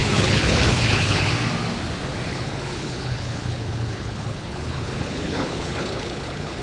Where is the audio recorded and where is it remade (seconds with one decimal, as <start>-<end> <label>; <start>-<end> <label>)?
0.0-1.3 remade; 1.3-2.3 recorded; 2.3-6.6 remade